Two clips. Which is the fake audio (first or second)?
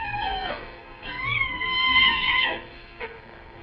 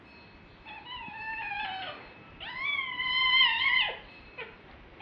first